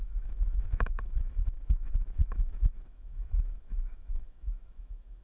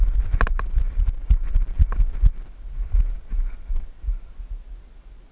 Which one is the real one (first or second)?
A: second